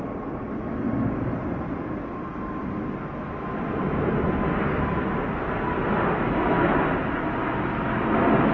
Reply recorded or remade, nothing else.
recorded